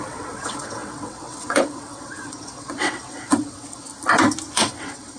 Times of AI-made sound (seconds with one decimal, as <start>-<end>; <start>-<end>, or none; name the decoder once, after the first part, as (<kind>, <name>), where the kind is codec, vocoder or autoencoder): 0.0-3.9 (vocoder, WaveNeXt); 4.5-5.2